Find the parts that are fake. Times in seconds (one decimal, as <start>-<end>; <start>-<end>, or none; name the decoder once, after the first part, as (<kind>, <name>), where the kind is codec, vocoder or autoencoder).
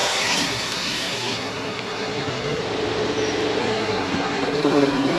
0.0-2.6 (codec, SNAC); 3.6-5.2